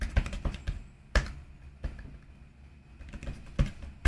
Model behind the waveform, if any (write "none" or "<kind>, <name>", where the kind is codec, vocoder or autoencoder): none